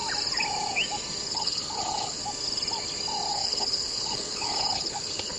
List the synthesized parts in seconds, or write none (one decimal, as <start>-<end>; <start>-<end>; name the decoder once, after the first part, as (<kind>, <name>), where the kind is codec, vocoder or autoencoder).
1.3-2.2 (codec, HILCodec); 3.3-5.4

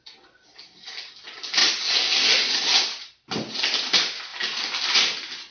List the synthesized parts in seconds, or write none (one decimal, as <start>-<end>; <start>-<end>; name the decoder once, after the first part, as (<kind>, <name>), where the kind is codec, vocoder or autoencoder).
none

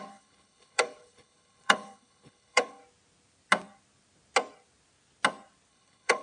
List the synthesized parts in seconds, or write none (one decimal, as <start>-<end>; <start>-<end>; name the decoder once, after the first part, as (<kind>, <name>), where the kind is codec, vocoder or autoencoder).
0.0-2.8 (codec, HILCodec); 5.7-6.2

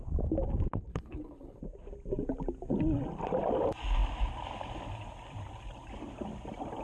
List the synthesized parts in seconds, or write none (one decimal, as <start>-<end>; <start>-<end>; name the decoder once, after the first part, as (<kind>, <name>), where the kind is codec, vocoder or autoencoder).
0.9-1.6 (codec, HILCodec)